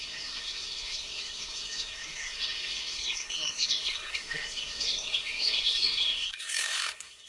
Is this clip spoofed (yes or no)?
yes